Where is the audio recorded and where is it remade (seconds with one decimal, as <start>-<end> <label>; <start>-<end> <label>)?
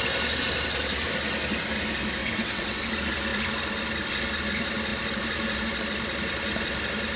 0.0-2.2 recorded; 2.2-2.9 remade; 2.9-7.2 recorded